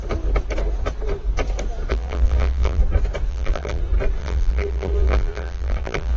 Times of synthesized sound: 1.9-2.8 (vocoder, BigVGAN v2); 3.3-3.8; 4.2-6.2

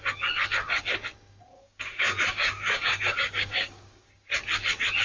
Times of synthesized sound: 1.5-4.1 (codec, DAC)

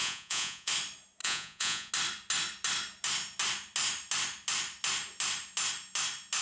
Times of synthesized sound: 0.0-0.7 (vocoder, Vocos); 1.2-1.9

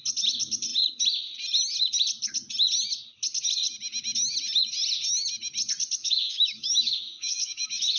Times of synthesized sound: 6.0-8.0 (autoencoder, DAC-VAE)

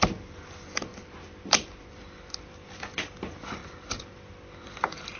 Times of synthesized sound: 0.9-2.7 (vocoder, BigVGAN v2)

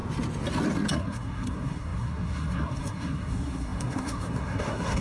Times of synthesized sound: 0.9-5.0 (codec, SNAC)

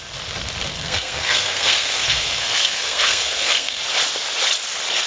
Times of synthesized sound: 0.7-3.8 (codec, SNAC)